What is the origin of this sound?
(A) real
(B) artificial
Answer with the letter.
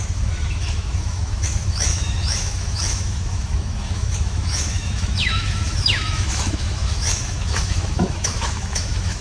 B